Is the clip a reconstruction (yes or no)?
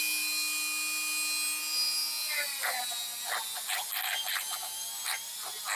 no